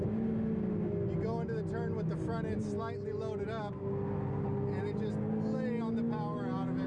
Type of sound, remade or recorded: recorded